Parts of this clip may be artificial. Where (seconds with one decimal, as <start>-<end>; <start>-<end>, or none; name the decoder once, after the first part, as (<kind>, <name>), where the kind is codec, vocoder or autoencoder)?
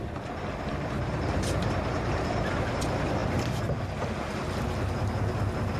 0.7-2.8 (vocoder, BigVGAN v2)